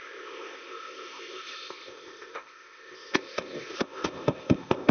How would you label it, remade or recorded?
remade